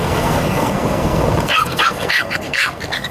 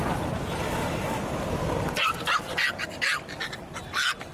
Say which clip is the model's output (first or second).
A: first